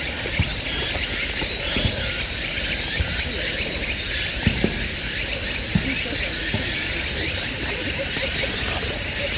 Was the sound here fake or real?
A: real